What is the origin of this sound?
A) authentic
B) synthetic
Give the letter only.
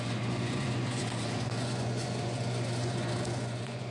B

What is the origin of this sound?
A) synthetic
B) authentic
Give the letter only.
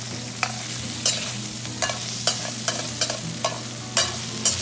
B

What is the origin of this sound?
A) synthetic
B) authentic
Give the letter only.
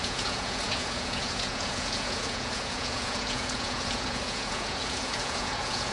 A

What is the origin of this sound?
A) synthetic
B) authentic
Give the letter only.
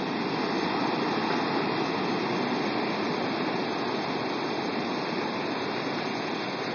B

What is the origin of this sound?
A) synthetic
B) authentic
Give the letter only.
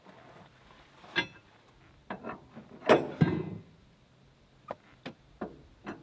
B